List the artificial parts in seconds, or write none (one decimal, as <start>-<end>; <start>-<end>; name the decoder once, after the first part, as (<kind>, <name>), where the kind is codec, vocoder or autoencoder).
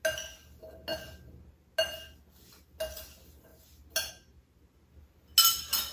none